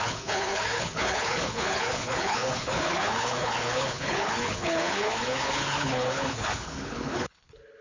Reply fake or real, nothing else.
fake